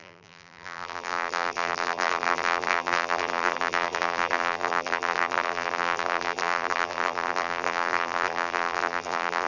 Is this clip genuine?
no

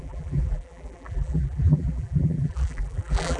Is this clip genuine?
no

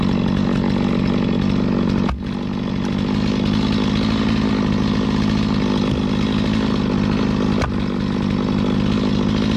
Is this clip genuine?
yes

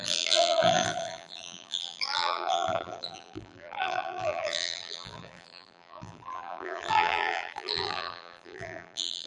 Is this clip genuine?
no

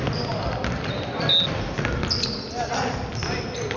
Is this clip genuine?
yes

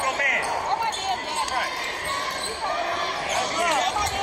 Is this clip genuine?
no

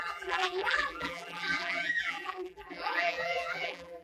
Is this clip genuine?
no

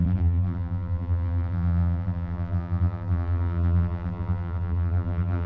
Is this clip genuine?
no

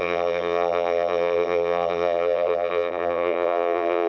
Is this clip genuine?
no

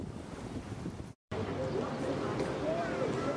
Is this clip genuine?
no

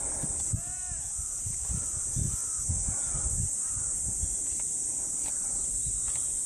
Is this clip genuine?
yes